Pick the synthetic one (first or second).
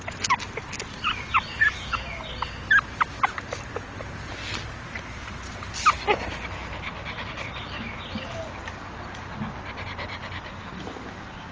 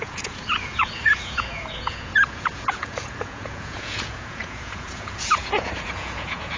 second